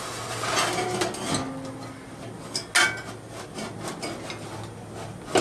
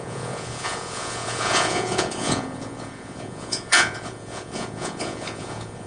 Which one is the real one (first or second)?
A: first